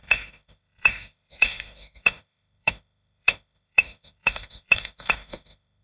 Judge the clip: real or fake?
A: fake